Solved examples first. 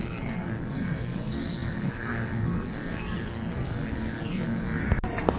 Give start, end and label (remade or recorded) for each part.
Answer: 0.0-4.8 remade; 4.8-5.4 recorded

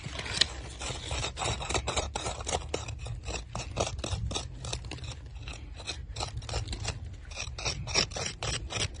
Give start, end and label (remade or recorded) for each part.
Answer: 0.0-1.2 recorded; 1.2-2.3 remade; 2.3-9.0 recorded

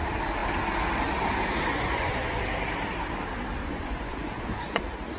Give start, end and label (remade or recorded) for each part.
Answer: 0.0-1.7 recorded; 1.7-2.4 remade; 2.4-3.6 recorded; 3.6-4.8 remade; 4.8-5.2 recorded

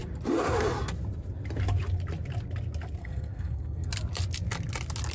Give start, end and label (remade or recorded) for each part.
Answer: 0.0-3.0 recorded; 3.0-3.9 remade; 3.9-5.1 recorded

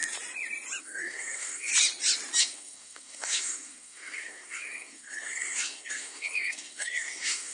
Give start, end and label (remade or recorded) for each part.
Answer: 0.0-0.8 recorded; 0.8-1.7 remade; 1.7-2.4 recorded; 2.4-7.5 remade

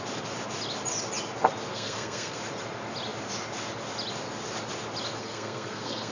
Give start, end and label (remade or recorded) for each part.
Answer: 0.0-1.7 recorded; 1.7-2.4 remade; 2.4-5.2 recorded; 5.2-6.1 remade

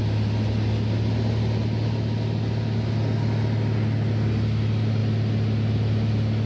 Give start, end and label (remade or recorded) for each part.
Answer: 0.0-6.5 recorded

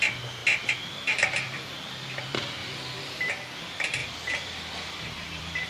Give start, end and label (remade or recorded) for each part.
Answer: 0.0-0.4 remade; 0.4-0.9 recorded; 0.9-5.7 remade